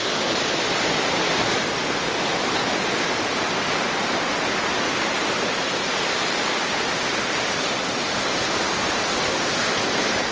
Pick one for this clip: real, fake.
real